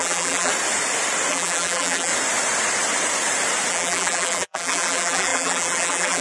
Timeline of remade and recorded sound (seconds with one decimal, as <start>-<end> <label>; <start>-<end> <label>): 0.0-0.5 remade; 0.5-1.3 recorded; 1.3-2.1 remade; 2.1-3.7 recorded; 3.7-6.2 remade